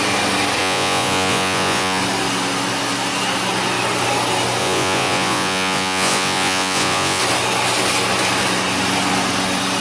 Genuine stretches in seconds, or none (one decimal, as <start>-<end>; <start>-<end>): 0.0-0.6; 2.0-4.6; 7.2-9.8